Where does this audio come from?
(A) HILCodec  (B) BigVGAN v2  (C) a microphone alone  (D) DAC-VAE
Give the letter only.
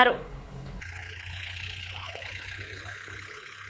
A